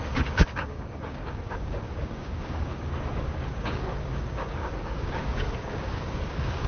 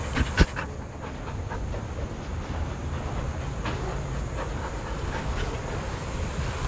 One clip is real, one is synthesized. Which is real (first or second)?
second